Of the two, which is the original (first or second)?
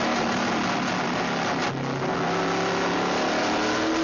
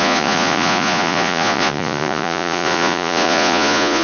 first